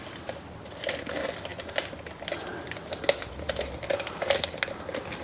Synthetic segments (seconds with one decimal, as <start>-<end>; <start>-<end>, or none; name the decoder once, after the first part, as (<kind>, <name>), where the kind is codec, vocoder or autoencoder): none